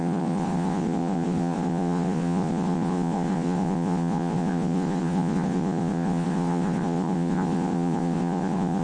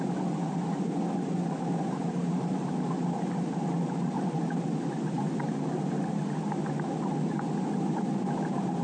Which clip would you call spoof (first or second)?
first